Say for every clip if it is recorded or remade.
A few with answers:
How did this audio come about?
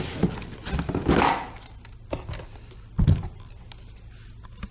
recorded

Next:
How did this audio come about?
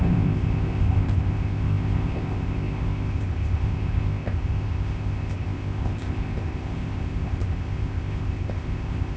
remade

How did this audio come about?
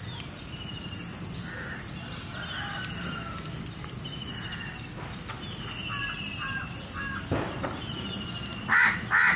recorded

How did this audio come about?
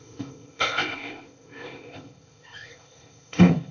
remade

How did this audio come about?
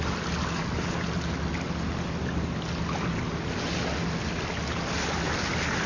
recorded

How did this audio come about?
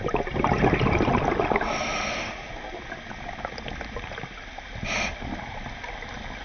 recorded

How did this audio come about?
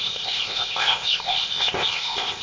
remade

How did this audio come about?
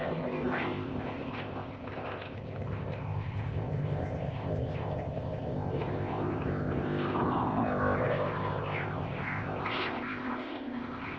remade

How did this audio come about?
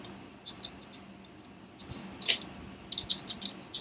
recorded